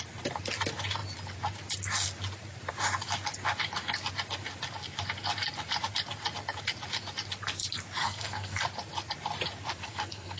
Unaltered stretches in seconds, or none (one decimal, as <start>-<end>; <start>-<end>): 0.0-8.0; 8.6-9.8